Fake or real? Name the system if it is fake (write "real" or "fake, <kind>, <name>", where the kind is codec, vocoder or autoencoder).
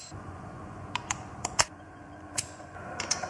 fake, vocoder, Vocos